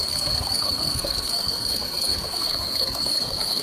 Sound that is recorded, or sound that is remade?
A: remade